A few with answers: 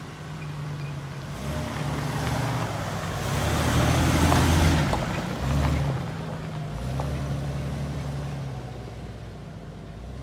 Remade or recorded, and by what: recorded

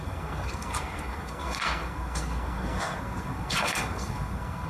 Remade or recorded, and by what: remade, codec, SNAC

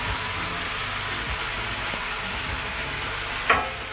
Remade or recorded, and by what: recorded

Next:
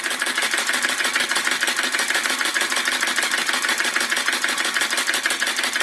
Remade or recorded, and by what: recorded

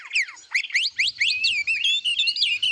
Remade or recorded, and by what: recorded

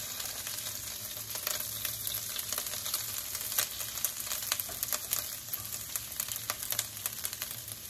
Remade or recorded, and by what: recorded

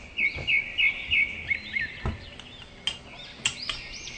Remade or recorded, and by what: recorded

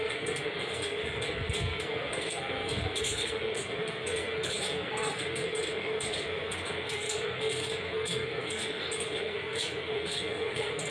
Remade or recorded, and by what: remade, codec, SNAC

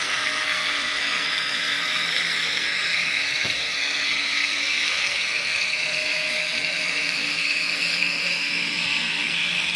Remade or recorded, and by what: remade, codec, SNAC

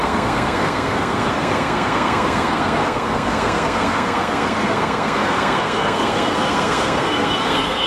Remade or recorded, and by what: remade, codec, SNAC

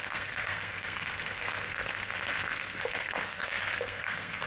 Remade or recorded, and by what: remade, codec, SNAC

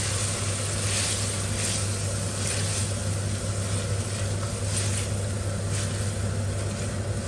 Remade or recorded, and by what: recorded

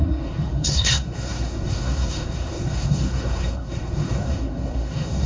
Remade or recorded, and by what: remade, codec, SNAC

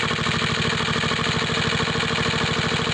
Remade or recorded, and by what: recorded